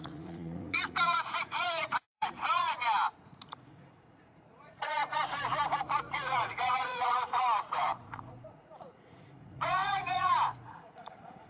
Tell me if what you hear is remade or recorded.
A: remade